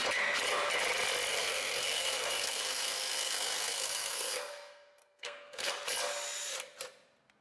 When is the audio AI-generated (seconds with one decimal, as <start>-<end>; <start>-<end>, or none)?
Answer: 1.3-5.7